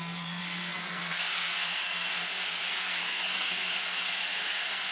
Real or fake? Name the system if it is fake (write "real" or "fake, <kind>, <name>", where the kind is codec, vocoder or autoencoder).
fake, codec, SNAC